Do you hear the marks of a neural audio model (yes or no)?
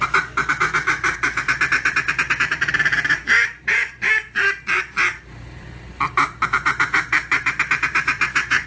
yes